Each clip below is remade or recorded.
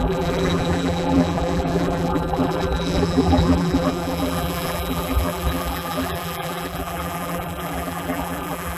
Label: remade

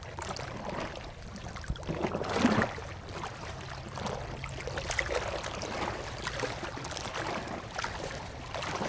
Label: recorded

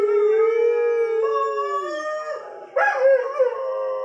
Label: recorded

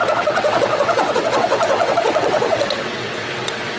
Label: remade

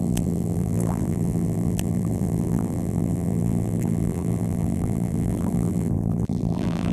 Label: remade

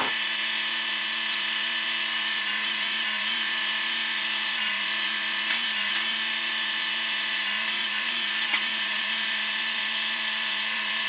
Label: remade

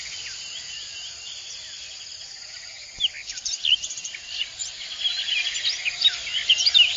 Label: recorded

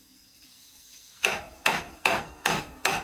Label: remade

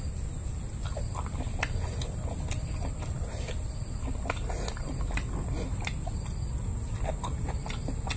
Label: recorded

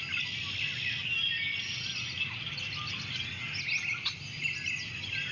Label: recorded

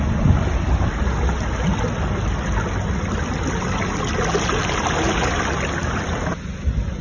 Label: recorded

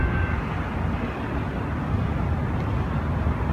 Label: recorded